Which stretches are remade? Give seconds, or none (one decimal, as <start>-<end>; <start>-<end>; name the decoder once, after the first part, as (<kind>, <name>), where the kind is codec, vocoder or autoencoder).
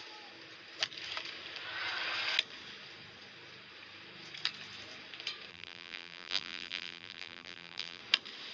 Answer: 5.5-8.0 (vocoder, BigVGAN v2)